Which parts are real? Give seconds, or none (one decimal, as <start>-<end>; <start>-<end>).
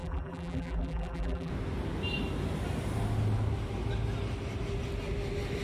1.5-5.6